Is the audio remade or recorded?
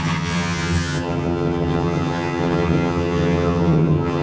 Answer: remade